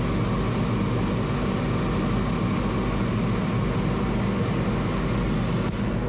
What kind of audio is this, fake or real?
real